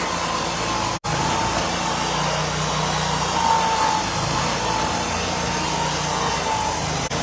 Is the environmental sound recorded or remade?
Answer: recorded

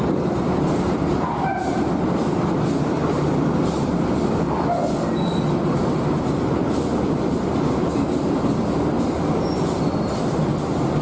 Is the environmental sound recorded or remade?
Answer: recorded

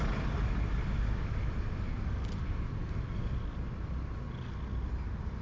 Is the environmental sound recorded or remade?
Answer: recorded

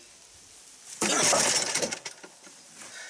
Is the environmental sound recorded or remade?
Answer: recorded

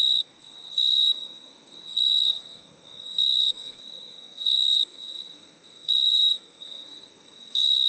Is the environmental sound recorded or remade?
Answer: remade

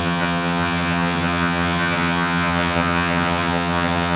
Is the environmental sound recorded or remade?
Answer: remade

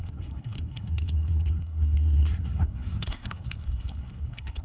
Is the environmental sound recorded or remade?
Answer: remade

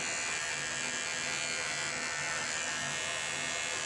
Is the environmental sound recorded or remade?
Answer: recorded